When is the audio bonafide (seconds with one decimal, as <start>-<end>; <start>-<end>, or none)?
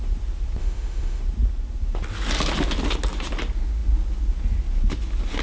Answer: 0.0-0.6; 1.2-5.4